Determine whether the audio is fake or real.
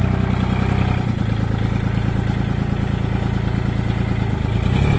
real